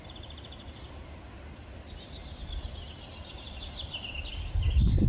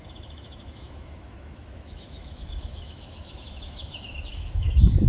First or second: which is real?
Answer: first